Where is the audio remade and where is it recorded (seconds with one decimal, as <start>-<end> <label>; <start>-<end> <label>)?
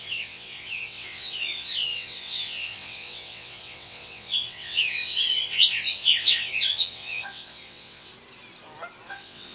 0.0-8.1 remade; 8.1-9.1 recorded; 9.1-9.5 remade